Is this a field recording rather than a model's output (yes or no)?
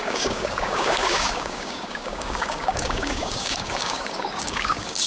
no